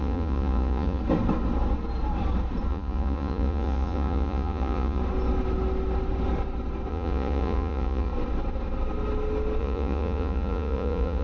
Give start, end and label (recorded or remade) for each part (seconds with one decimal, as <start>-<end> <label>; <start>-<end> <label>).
0.0-1.0 remade; 1.0-2.7 recorded; 2.7-5.0 remade; 5.0-6.9 recorded; 6.9-8.1 remade; 8.1-9.6 recorded; 9.6-11.2 remade

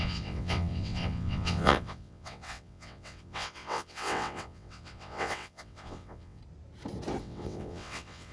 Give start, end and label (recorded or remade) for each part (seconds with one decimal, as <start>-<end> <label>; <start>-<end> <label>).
0.0-6.4 remade; 6.4-7.2 recorded; 7.2-8.3 remade

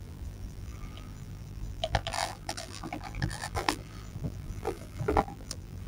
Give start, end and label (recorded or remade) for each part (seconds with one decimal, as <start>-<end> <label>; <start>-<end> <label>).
0.0-5.9 remade

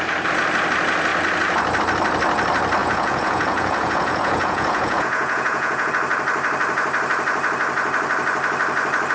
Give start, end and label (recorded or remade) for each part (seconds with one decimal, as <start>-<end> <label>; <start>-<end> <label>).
0.0-2.8 recorded; 2.8-5.9 remade; 5.9-9.1 recorded

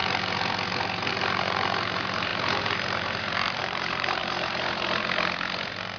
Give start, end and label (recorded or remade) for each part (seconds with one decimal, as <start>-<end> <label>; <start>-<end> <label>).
0.0-1.1 recorded; 1.1-4.2 remade; 4.2-6.0 recorded

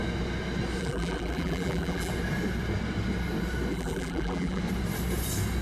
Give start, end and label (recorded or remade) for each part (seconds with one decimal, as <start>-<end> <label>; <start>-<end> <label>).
0.0-0.8 recorded; 0.8-2.1 remade; 2.1-3.7 recorded; 3.7-4.6 remade; 4.6-5.6 recorded

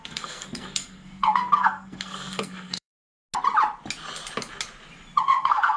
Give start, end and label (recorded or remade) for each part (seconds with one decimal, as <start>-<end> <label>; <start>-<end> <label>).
0.0-3.1 remade; 3.1-5.2 recorded; 5.2-5.8 remade

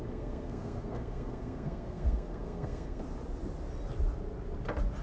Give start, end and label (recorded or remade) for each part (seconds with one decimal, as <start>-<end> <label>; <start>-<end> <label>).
0.0-3.0 remade; 3.0-5.0 recorded